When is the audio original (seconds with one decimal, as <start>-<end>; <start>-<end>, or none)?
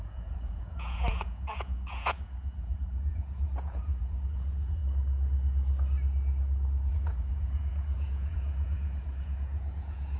4.8-6.9